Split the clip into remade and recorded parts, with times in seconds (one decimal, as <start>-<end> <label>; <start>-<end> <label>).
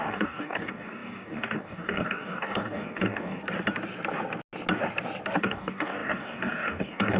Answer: 0.0-3.4 remade; 3.4-5.4 recorded; 5.4-7.2 remade